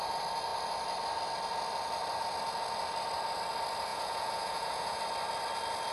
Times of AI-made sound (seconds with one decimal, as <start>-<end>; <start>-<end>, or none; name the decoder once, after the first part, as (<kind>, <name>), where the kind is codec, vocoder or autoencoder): 3.9-5.0 (vocoder, Vocos)